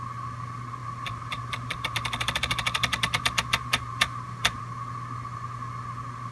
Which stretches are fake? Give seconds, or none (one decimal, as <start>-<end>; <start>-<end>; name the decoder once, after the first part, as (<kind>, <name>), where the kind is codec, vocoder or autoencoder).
0.8-4.6 (vocoder, BigVGAN v2)